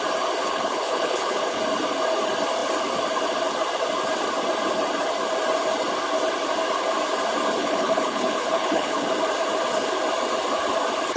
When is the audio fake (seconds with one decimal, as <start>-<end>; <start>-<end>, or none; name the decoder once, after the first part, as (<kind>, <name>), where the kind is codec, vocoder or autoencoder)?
0.4-1.6 (codec, HILCodec); 7.6-9.1